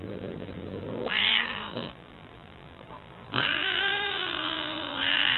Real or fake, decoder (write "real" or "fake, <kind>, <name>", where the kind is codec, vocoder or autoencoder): fake, vocoder, BigVGAN v2